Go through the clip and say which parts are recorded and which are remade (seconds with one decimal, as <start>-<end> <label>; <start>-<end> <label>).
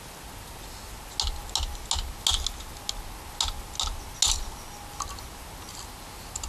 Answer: 0.0-6.5 recorded